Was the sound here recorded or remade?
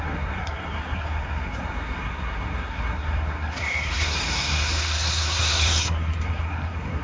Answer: remade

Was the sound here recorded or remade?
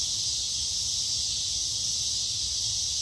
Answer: recorded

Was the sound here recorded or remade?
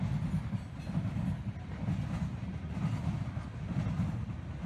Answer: recorded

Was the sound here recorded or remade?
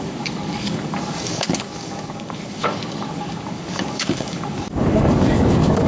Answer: remade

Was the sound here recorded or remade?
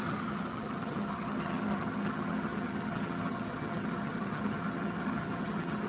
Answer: remade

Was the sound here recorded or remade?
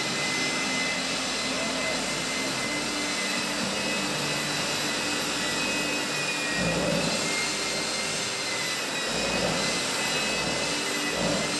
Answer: recorded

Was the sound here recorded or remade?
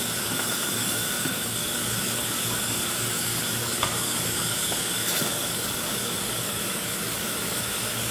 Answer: remade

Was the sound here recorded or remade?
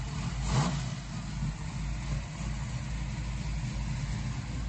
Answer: recorded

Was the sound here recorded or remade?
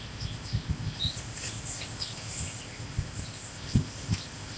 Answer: remade